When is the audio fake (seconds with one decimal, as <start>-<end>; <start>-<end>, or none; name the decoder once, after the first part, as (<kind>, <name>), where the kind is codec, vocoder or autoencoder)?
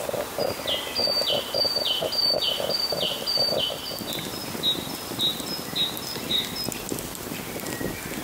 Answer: none